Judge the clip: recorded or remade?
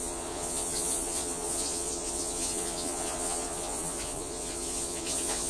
remade